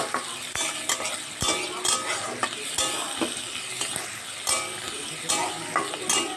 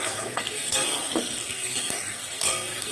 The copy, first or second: second